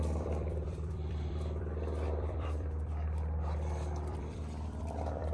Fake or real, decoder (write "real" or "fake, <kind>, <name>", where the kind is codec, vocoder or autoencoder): fake, vocoder, BigVGAN v2